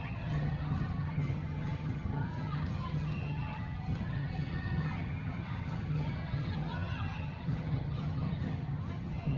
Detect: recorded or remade remade